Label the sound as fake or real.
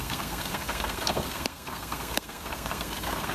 fake